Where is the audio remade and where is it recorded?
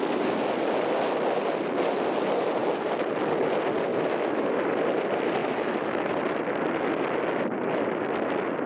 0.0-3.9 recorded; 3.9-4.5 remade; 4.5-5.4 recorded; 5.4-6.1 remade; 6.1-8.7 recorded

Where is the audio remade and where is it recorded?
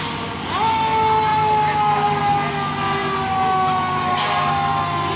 0.0-5.2 recorded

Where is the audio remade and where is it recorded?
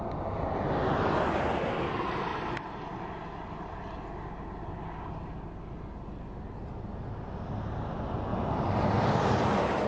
0.0-2.3 recorded; 2.3-2.9 remade; 2.9-9.9 recorded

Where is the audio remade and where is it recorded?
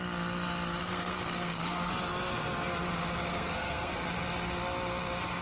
0.0-0.8 recorded; 0.8-1.9 remade; 1.9-3.3 recorded; 3.3-3.9 remade; 3.9-5.4 recorded